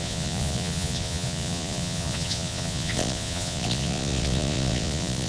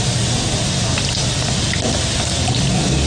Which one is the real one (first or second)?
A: second